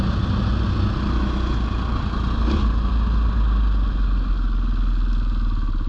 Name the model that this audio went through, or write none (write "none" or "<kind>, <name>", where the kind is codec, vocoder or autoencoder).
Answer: none